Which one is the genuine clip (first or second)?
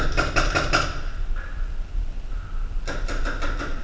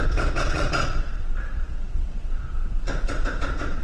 first